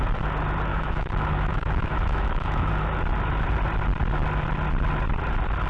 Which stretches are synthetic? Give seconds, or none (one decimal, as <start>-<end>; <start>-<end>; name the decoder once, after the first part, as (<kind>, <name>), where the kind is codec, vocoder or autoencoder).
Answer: 0.7-2.7 (autoencoder, DAC-VAE)